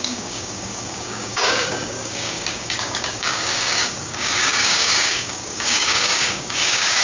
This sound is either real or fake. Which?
fake